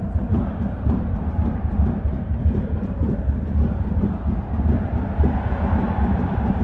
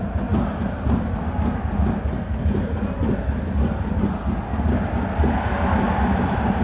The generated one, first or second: first